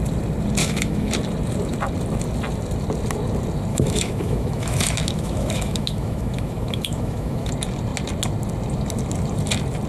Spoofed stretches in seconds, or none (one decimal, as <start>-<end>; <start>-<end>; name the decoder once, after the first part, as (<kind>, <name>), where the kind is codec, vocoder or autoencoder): 0.6-1.1 (autoencoder, DAC-VAE); 3.7-7.5